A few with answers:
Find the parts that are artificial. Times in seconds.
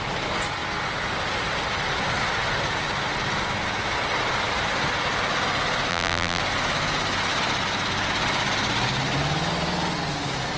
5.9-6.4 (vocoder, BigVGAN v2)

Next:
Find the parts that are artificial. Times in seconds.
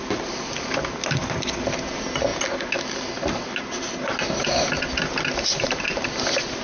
none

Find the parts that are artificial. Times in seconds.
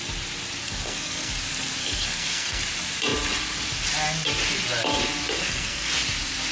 0.6-1.3 (codec, SNAC); 1.8-2.6; 5.4-5.9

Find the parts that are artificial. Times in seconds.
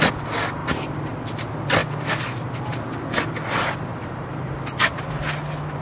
0.6-1.2 (vocoder, BigVGAN v2); 1.8-2.6; 3.9-5.1